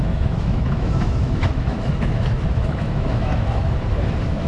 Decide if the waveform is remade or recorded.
remade